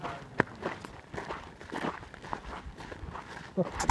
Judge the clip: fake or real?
real